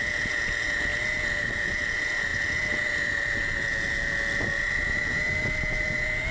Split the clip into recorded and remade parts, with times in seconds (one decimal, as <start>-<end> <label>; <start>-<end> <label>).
0.0-6.3 recorded